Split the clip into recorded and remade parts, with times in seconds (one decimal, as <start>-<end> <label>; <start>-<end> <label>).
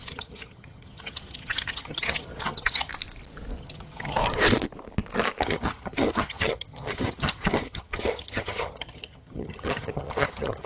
0.0-2.9 remade; 2.9-3.6 recorded; 3.6-4.2 remade; 4.2-5.4 recorded; 5.4-10.7 remade